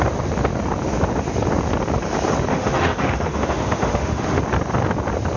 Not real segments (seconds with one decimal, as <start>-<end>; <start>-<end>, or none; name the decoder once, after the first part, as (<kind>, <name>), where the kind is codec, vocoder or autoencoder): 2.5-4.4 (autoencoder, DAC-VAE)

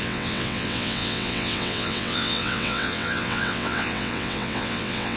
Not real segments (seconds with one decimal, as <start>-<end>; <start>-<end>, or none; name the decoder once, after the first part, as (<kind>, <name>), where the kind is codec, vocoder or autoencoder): 0.0-5.2 (vocoder, WaveNeXt)

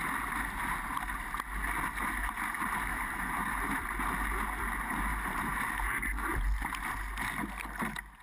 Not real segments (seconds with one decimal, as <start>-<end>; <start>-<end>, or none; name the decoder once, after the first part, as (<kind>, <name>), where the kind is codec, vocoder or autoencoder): 2.9-3.9 (vocoder, BigVGAN v2); 5.1-5.7